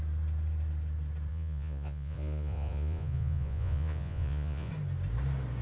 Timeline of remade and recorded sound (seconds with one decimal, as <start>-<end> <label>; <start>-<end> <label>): 0.0-1.3 recorded; 1.3-4.7 remade; 4.7-5.6 recorded